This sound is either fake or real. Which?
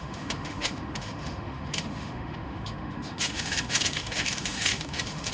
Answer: fake